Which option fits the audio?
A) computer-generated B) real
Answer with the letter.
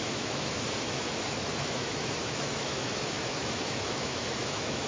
A